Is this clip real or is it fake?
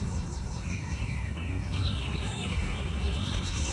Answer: fake